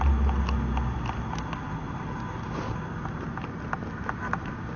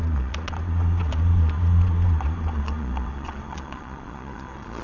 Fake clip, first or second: second